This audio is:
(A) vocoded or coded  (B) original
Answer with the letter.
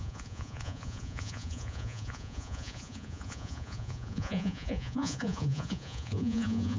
A